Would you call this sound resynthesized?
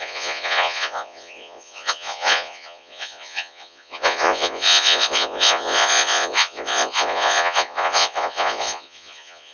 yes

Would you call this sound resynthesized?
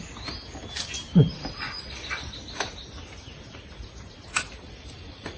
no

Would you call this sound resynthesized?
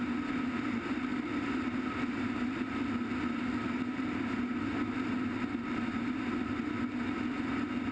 no